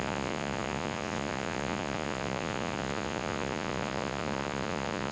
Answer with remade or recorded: remade